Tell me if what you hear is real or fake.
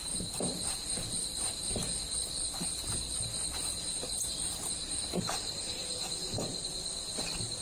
real